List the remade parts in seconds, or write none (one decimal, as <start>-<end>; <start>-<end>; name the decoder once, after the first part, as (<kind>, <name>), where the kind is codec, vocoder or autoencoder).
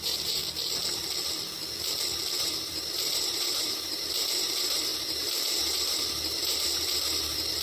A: 0.0-0.4 (vocoder, BigVGAN v2); 2.4-7.6